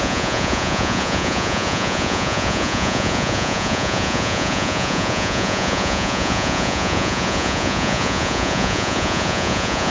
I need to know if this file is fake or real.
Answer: fake